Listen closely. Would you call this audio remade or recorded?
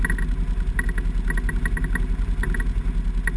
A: recorded